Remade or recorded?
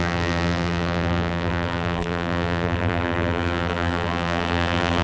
remade